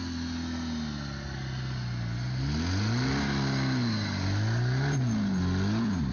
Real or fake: real